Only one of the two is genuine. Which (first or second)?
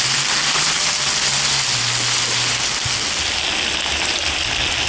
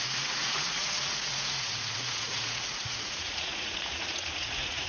first